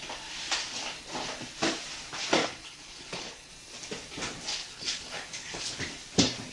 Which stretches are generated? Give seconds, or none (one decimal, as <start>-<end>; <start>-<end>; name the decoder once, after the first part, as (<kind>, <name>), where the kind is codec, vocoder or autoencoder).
2.4-3.5 (codec, HILCodec); 4.6-5.8